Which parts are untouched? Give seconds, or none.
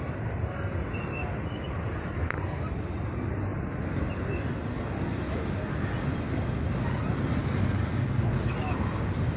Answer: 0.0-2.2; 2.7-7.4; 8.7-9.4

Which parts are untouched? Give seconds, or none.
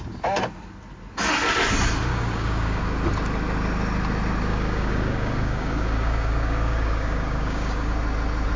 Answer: 0.0-2.1; 2.8-4.5; 7.9-8.6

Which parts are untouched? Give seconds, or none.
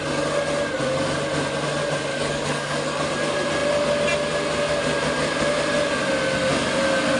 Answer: 0.0-2.1; 3.1-7.2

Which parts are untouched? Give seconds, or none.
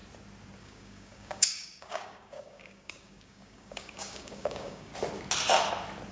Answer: 0.0-0.6; 4.9-6.1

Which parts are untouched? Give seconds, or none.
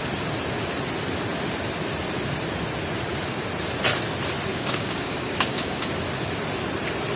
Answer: 0.0-4.5; 5.9-7.2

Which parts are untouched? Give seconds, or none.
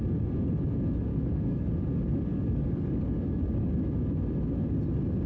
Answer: 0.0-1.1; 1.7-2.3; 3.7-5.3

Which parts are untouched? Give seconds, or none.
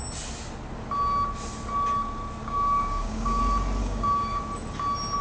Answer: 0.0-2.4; 3.4-3.8; 4.4-5.2